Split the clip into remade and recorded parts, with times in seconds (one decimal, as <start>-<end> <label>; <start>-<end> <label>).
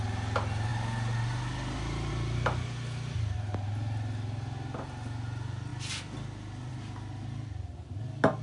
0.0-8.4 recorded